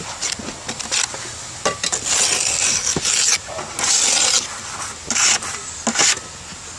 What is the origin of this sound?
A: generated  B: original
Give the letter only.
B